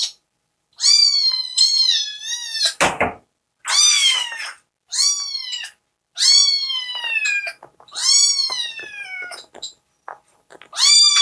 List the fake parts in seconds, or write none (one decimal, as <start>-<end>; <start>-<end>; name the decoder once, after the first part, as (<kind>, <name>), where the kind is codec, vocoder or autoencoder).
none